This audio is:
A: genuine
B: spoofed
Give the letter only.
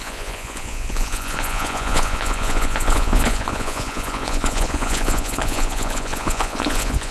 B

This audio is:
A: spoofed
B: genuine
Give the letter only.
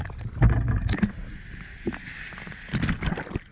B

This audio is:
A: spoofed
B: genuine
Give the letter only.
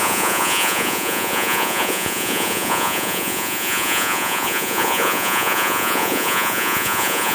A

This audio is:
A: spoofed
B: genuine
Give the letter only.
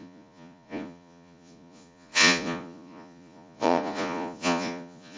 A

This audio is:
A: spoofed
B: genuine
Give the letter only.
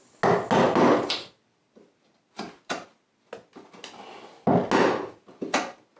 B